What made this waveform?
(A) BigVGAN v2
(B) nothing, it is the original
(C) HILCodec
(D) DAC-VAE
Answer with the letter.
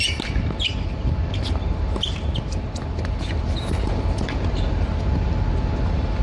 A